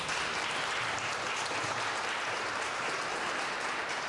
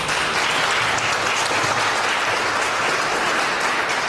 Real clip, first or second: second